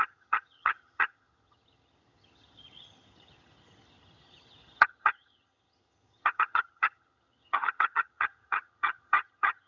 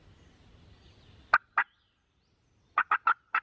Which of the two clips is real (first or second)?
second